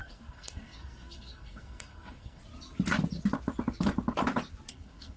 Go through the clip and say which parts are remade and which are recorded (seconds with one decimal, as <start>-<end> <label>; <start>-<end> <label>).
0.0-2.4 remade; 2.4-4.7 recorded; 4.7-5.2 remade